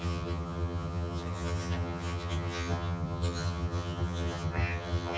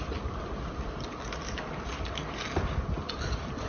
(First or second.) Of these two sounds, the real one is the second